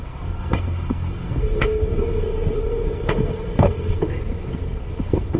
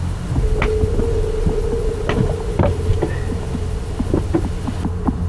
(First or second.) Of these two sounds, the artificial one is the first